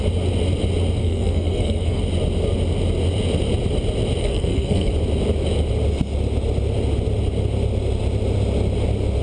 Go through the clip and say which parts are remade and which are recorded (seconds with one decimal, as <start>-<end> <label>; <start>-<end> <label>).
0.0-1.0 recorded; 1.0-2.0 remade; 2.0-4.2 recorded; 4.2-4.9 remade; 4.9-9.2 recorded